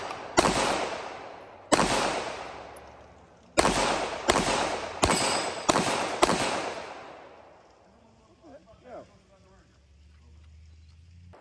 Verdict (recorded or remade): recorded